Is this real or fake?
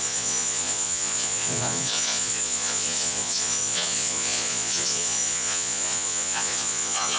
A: fake